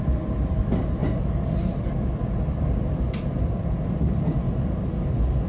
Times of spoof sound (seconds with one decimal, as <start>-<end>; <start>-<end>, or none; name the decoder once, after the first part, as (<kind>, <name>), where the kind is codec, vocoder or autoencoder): 1.0-3.4 (vocoder, BigVGAN v2)